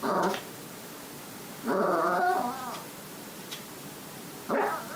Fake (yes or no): yes